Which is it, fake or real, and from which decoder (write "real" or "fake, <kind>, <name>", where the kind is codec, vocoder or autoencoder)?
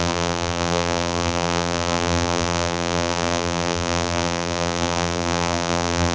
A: fake, vocoder, BigVGAN v2